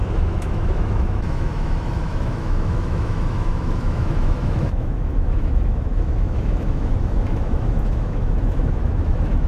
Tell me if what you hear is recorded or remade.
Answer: remade